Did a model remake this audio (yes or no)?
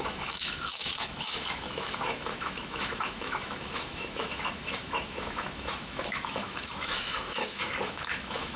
yes